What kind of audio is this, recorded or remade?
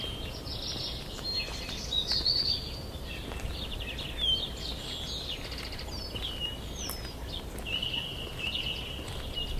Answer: recorded